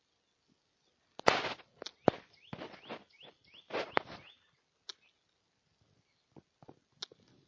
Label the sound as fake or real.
real